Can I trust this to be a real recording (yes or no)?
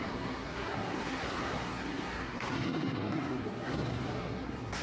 no